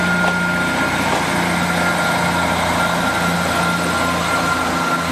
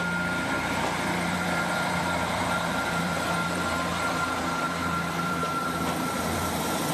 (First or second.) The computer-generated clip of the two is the second